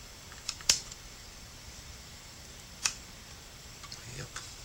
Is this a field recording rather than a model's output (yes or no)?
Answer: no